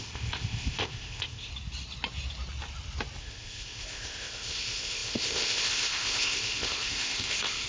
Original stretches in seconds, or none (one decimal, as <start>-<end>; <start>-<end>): 1.5-3.2

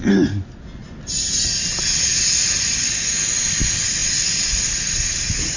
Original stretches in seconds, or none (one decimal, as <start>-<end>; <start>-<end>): 0.0-5.6

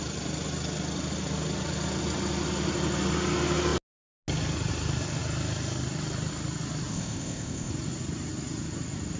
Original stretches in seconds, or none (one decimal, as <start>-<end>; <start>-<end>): 0.0-6.9; 7.7-9.2

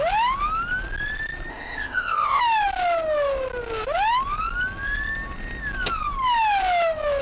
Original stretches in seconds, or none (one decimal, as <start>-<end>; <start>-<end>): 0.0-1.5; 2.4-7.2

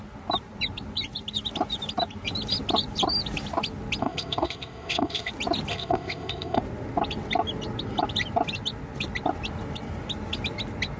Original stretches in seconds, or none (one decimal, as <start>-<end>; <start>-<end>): 0.0-4.0; 5.3-5.7; 6.6-11.0

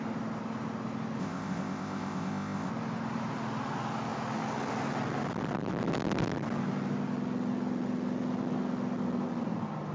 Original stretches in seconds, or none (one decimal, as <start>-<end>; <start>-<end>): 0.0-1.2; 2.7-9.9